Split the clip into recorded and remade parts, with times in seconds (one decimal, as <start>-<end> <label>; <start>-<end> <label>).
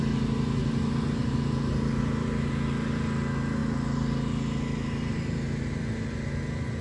0.0-0.6 recorded; 0.6-2.0 remade; 2.0-6.8 recorded